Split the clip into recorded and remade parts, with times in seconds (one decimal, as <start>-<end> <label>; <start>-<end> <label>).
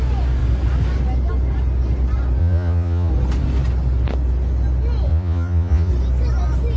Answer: 0.0-2.4 recorded; 2.4-3.1 remade; 3.1-5.1 recorded; 5.1-5.9 remade; 5.9-6.8 recorded